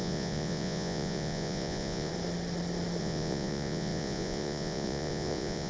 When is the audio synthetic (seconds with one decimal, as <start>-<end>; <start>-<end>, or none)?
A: 0.0-2.1; 3.0-5.7